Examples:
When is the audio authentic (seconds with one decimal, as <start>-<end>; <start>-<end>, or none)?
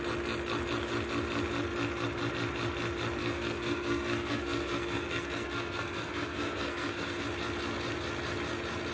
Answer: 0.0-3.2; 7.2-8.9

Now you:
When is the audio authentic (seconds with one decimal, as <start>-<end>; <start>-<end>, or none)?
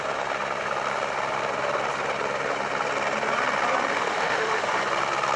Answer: 0.0-3.9; 4.8-5.4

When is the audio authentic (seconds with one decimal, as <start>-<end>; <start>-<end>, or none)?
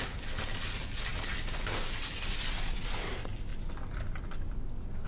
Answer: 0.0-1.1; 2.5-5.1